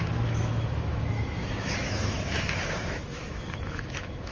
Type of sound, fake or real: fake